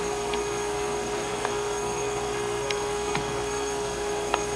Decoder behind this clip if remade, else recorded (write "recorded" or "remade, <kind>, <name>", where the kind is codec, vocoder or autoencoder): remade, codec, SNAC